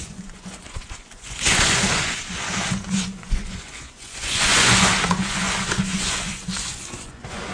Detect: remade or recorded remade